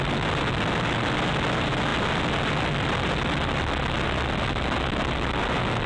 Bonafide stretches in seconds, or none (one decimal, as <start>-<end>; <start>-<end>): 0.0-5.9